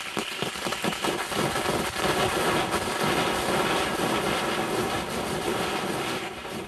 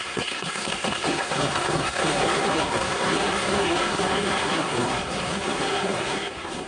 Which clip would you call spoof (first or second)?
second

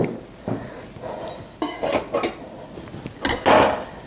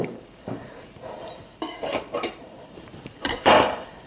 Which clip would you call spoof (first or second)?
second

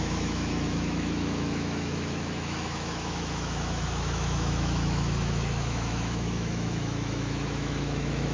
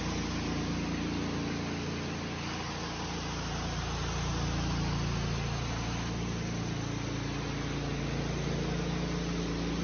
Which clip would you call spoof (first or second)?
first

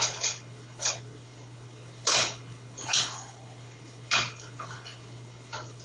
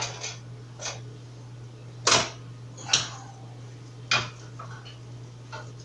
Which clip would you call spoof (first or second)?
first